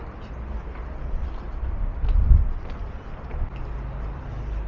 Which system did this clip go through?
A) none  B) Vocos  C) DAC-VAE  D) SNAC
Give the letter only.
A